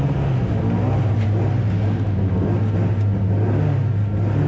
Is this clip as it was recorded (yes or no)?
yes